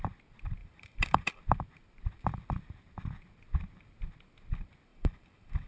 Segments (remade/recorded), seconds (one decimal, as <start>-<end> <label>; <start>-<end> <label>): 0.0-0.6 recorded; 0.6-1.4 remade; 1.4-4.9 recorded; 4.9-5.7 remade

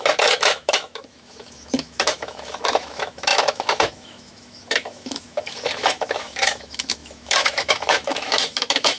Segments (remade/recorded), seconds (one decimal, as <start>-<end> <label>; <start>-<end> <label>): 0.0-9.0 remade

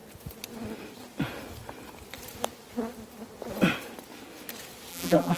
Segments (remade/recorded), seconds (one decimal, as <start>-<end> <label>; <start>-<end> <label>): 0.0-4.9 recorded; 4.9-5.4 remade

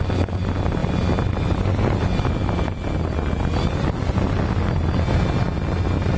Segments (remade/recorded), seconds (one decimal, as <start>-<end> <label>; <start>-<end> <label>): 0.0-6.2 recorded

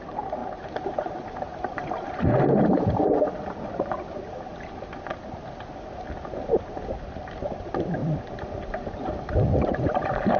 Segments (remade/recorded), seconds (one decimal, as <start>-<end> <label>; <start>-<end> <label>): 0.0-0.4 remade; 0.4-2.6 recorded; 2.6-5.1 remade; 5.1-6.6 recorded; 6.6-10.4 remade

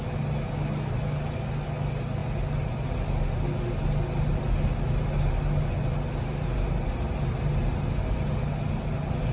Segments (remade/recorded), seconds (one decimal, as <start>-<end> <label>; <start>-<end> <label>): 0.0-9.3 recorded

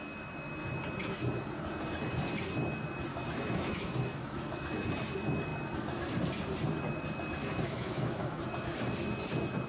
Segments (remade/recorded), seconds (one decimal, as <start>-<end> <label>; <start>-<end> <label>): 0.0-3.1 recorded; 3.1-4.9 remade; 4.9-7.4 recorded; 7.4-8.4 remade; 8.4-9.7 recorded